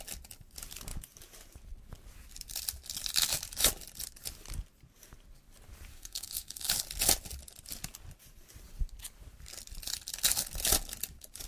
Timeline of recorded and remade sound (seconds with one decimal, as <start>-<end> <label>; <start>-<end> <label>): 0.0-5.9 recorded; 5.9-6.7 remade; 6.7-11.5 recorded

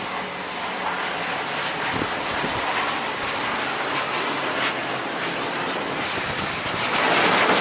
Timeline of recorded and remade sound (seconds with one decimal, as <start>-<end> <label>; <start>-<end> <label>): 0.0-7.6 recorded

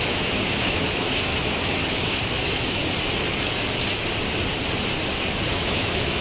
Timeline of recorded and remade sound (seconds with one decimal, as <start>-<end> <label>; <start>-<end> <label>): 0.0-1.3 remade; 1.3-1.9 recorded; 1.9-2.8 remade; 2.8-5.5 recorded; 5.5-6.2 remade

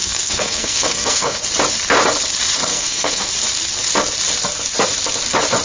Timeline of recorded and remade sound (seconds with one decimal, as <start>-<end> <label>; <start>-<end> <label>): 0.0-1.4 remade; 1.4-2.7 recorded; 2.7-3.3 remade; 3.3-5.6 recorded

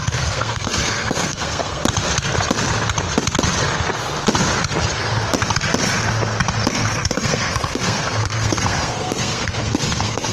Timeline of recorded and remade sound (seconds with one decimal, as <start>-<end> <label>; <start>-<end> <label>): 0.0-1.8 remade; 1.8-6.7 recorded; 6.7-10.3 remade

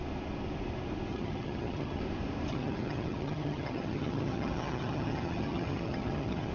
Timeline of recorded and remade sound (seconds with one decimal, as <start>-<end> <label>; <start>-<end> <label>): 0.0-1.1 recorded; 1.1-2.0 remade; 2.0-2.5 recorded; 2.5-6.5 remade